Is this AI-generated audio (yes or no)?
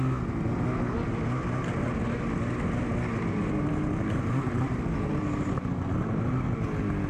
no